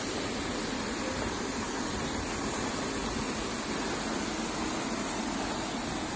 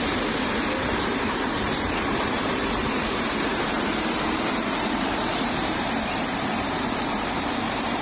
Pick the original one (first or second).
first